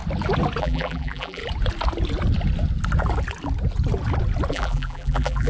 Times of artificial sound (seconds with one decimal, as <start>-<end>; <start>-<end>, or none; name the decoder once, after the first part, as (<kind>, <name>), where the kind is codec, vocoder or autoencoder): 0.6-1.4 (vocoder, BigVGAN v2); 4.5-5.5